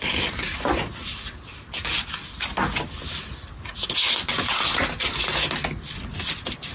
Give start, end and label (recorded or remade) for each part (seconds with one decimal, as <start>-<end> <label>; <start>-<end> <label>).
0.0-6.7 recorded